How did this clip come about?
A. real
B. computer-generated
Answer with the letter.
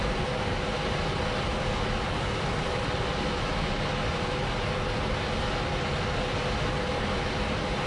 A